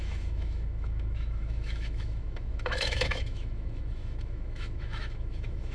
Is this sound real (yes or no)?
no